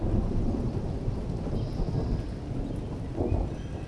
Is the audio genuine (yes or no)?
yes